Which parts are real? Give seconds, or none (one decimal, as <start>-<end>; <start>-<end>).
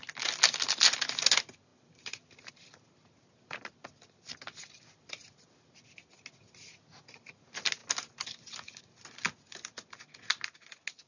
0.0-11.1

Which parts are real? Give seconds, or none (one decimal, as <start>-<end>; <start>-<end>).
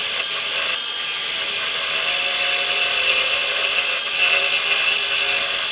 0.0-5.7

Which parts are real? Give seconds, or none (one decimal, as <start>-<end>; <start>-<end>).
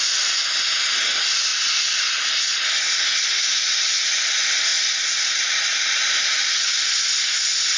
0.0-7.8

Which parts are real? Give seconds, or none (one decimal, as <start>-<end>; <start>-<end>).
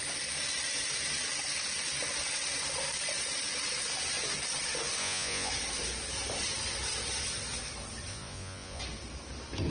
0.0-5.0; 5.5-8.1; 8.8-9.7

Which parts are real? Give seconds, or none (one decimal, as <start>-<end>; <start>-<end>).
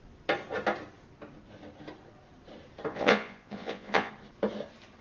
0.0-2.9; 4.1-5.0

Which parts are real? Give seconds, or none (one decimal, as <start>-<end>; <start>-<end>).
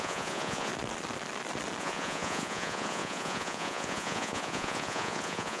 0.7-1.8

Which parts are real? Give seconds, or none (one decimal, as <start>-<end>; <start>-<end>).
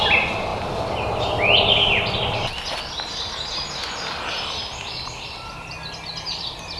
0.0-6.8